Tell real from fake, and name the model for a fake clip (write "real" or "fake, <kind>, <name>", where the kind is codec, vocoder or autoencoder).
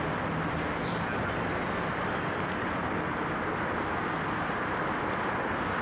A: real